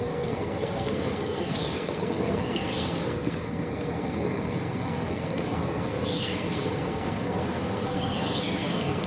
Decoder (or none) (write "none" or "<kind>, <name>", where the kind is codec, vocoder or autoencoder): codec, SNAC